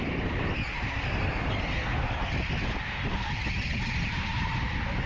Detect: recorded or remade recorded